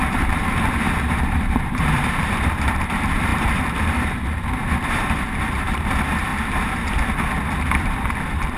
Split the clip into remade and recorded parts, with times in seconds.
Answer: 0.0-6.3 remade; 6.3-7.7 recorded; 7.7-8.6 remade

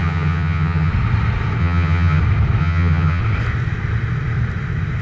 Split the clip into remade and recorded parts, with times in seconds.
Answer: 0.0-0.9 remade; 0.9-1.6 recorded; 1.6-2.2 remade; 2.2-2.6 recorded; 2.6-3.2 remade; 3.2-5.0 recorded